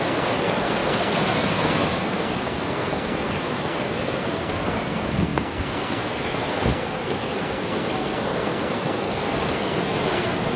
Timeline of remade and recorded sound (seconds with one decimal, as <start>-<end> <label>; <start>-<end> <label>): 0.0-10.6 remade